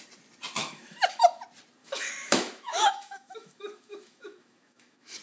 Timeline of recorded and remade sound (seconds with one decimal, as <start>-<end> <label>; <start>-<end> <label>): 0.0-0.6 recorded; 0.6-1.4 remade; 1.4-1.8 recorded; 1.8-5.2 remade